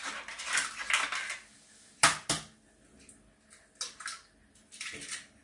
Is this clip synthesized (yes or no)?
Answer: no